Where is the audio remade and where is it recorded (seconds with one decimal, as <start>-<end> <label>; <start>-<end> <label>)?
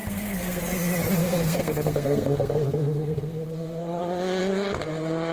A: 0.0-0.6 remade; 0.6-1.2 recorded; 1.2-4.0 remade; 4.0-5.3 recorded